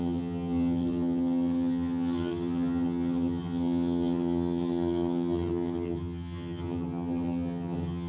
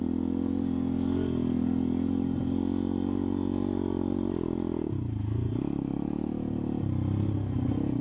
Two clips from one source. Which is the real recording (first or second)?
second